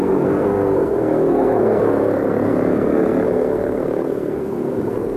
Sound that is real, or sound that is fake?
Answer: fake